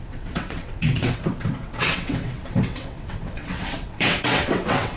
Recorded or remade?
remade